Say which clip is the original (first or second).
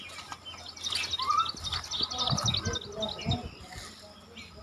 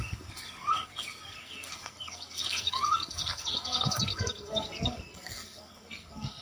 first